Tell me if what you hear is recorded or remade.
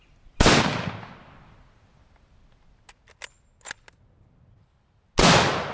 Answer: recorded